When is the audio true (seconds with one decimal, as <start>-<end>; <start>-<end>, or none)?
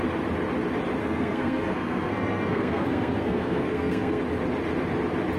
0.0-1.0; 4.2-5.4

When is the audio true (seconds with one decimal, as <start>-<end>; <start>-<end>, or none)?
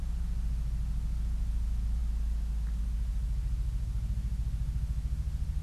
0.0-5.6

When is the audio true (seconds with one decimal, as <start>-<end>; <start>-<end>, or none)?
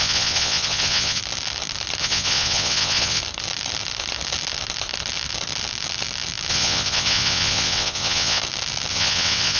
1.2-2.0; 3.2-6.5; 8.4-8.9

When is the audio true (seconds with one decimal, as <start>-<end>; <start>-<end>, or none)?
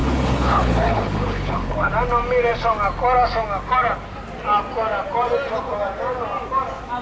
1.9-7.0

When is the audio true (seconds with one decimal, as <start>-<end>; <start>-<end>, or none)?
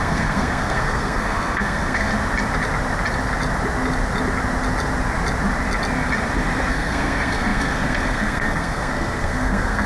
2.1-6.7